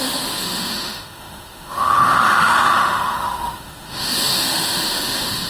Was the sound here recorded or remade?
remade